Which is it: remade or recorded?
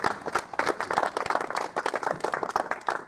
recorded